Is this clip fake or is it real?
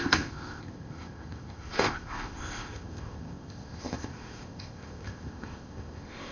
fake